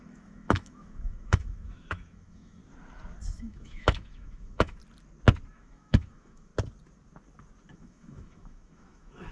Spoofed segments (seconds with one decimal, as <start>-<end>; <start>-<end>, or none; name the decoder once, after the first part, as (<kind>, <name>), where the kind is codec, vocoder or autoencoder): 0.0-2.6 (autoencoder, DAC-VAE); 3.3-4.8; 5.5-6.5; 7.7-9.3